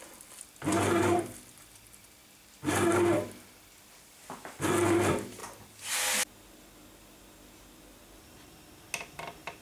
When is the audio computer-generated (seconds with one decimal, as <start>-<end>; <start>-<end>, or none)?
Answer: none